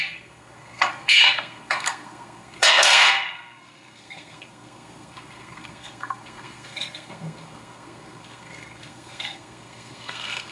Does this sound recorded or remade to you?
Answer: remade